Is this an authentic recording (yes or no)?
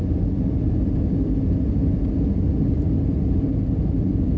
yes